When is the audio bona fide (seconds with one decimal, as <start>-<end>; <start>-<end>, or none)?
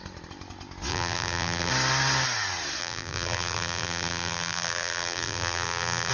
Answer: 0.0-0.9; 1.7-2.8